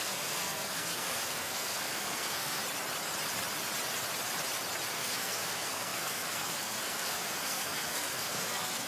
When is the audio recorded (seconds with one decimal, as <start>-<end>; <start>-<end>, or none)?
2.6-4.9